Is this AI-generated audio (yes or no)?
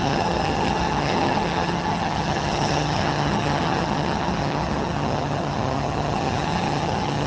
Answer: yes